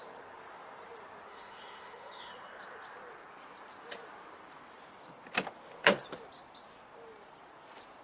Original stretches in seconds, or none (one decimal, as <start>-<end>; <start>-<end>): 0.0-1.3; 2.3-8.0

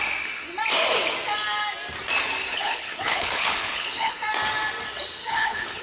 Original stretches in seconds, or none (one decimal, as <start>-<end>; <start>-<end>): 0.0-2.5; 4.2-5.2

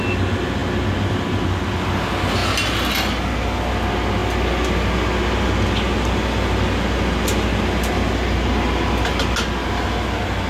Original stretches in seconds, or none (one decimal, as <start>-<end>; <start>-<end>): 0.0-10.5